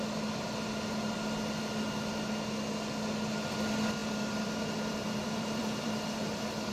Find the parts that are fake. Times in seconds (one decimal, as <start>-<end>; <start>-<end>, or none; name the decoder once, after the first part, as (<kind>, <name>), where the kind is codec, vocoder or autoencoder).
4.0-6.7 (vocoder, BigVGAN v2)